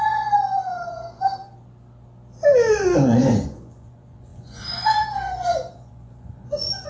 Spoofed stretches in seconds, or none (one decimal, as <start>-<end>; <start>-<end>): 0.0-1.4; 2.7-6.9